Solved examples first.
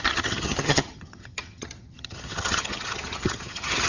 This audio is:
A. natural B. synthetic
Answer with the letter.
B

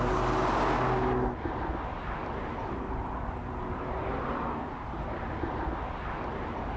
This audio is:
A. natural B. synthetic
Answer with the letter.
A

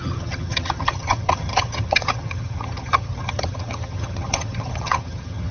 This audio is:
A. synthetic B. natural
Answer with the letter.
A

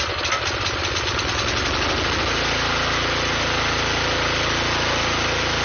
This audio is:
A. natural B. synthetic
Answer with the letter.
A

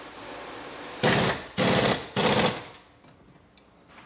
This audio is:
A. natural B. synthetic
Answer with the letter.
A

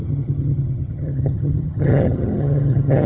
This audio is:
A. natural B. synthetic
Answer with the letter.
B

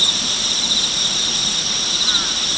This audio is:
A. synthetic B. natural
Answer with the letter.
B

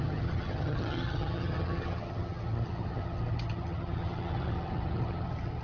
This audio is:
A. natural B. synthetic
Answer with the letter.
B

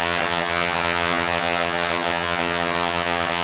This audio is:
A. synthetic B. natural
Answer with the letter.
A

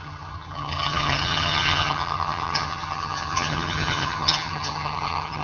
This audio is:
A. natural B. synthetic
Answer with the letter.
B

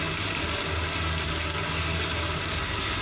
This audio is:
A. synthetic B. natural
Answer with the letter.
B